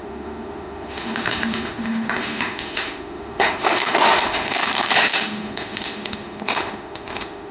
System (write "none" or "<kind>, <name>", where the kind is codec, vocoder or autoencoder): autoencoder, DAC-VAE